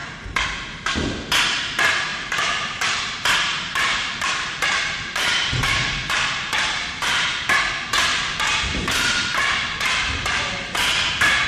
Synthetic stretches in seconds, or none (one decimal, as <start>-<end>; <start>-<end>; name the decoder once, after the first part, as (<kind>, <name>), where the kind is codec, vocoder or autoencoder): 2.1-3.0 (vocoder, BigVGAN v2); 3.5-7.4; 8.1-11.1